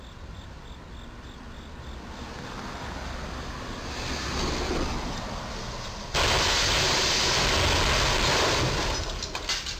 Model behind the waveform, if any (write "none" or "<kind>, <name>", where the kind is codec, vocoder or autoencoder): none